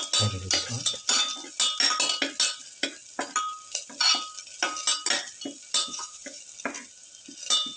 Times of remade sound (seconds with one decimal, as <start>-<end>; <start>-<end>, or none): 5.8-6.4